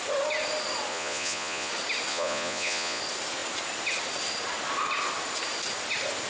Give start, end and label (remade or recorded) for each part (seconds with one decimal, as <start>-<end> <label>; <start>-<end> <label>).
0.0-0.9 recorded; 0.9-1.7 remade; 1.7-2.1 recorded; 2.1-3.0 remade; 3.0-6.3 recorded